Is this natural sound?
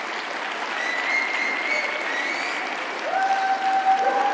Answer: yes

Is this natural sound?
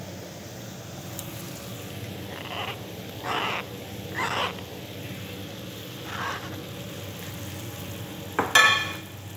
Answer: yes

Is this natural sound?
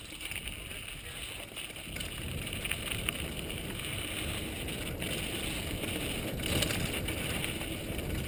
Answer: yes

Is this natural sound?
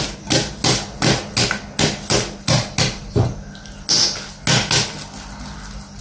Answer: yes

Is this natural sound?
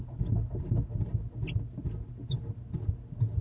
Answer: yes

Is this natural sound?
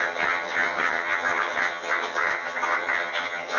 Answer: no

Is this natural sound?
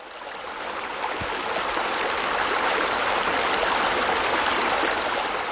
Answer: yes